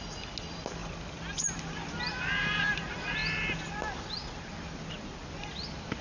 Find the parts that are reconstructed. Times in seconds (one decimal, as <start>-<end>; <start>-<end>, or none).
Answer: none